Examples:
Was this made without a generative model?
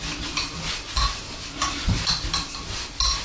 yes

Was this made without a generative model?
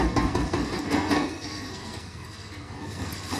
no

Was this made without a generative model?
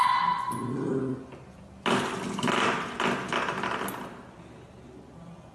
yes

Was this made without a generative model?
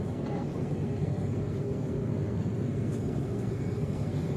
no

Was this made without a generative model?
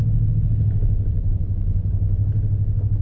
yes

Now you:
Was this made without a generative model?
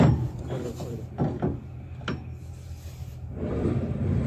yes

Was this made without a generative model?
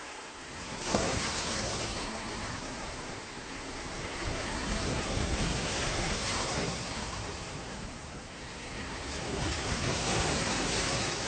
no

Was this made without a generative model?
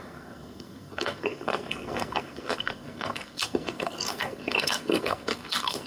no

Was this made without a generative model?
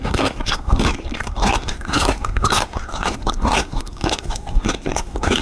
no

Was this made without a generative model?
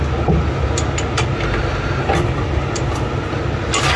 yes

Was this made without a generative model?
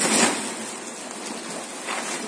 yes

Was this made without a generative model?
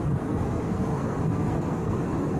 no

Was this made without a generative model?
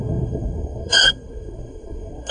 no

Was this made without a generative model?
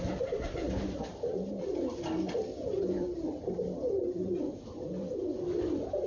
yes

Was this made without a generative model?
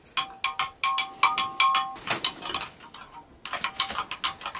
yes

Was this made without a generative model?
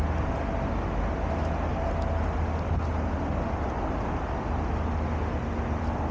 yes